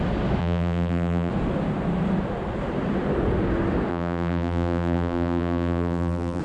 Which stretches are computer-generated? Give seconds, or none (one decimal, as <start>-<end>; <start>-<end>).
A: 0.4-1.3; 3.9-6.4

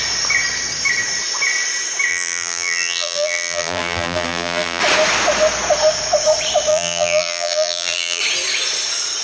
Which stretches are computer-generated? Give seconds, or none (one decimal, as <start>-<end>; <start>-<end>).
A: 2.1-4.8; 6.7-8.2

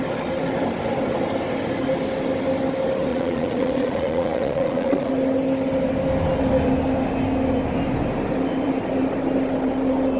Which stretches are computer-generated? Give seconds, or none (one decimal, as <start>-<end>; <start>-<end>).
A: 3.1-5.1